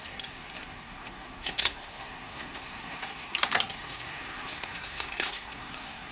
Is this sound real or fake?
fake